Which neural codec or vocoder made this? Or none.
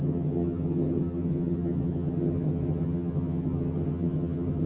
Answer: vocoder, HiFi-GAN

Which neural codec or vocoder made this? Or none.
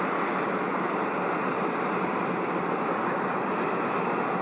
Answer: none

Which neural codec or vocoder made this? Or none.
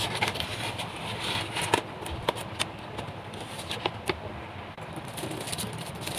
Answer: none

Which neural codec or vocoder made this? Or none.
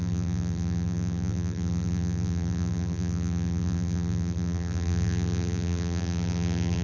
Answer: vocoder, BigVGAN v2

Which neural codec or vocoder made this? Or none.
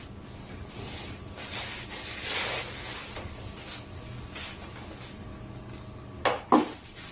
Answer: none